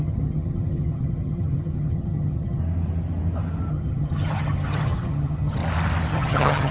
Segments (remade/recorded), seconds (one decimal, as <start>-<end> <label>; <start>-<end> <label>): 0.0-2.6 remade; 2.6-3.7 recorded; 3.7-5.6 remade; 5.6-6.1 recorded; 6.1-6.7 remade